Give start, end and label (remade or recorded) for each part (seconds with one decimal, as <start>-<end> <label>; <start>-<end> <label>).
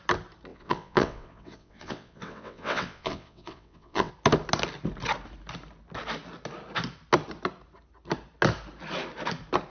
0.0-0.5 recorded; 0.5-4.1 remade; 4.1-9.7 recorded